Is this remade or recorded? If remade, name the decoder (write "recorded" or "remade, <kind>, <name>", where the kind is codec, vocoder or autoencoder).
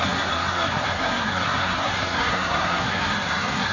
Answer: remade, codec, SNAC